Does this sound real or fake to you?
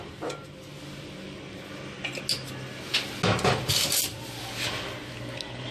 real